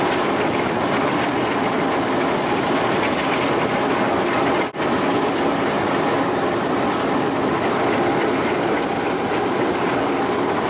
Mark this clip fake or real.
real